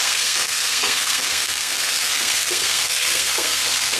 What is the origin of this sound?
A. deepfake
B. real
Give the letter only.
A